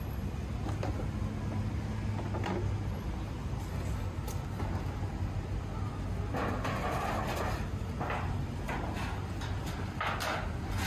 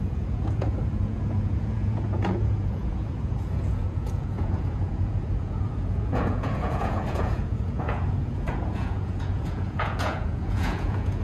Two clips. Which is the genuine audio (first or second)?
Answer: first